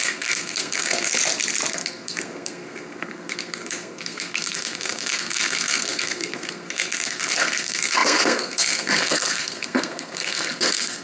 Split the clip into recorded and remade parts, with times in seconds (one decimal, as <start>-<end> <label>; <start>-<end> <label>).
0.0-1.1 remade; 1.1-1.7 recorded; 1.7-11.0 remade